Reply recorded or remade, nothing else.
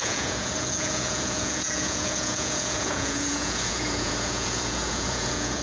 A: remade